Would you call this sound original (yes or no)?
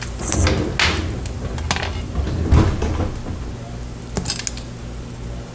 yes